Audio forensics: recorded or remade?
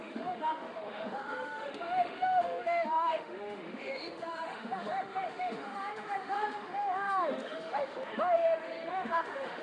remade